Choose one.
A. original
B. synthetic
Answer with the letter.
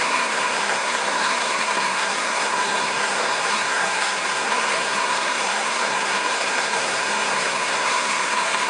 B